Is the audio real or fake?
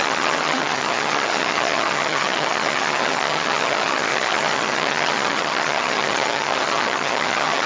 fake